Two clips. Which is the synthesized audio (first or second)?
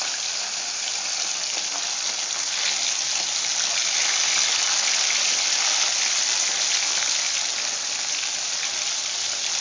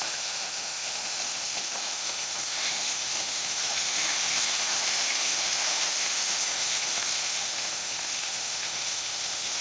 second